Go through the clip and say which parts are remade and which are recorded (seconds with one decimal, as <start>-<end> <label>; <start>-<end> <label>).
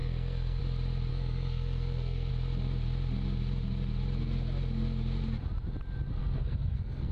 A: 0.0-0.6 remade; 0.6-1.1 recorded; 1.1-2.3 remade; 2.3-6.2 recorded; 6.2-7.1 remade